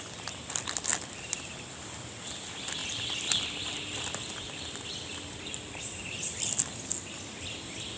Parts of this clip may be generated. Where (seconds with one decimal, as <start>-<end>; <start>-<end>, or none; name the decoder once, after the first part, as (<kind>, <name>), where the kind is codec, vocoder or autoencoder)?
2.8-6.7 (vocoder, BigVGAN v2)